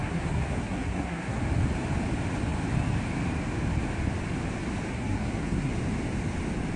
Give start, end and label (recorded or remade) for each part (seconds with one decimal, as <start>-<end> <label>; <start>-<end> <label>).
0.0-1.4 remade; 1.4-4.9 recorded; 4.9-5.7 remade; 5.7-6.8 recorded